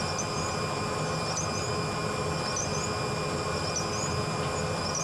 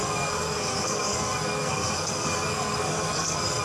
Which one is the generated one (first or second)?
second